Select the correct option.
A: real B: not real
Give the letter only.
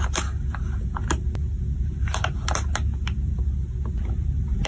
A